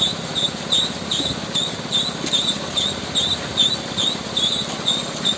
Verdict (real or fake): real